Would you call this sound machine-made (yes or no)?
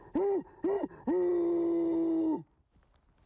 no